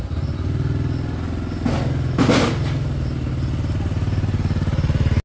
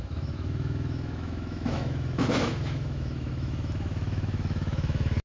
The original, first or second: first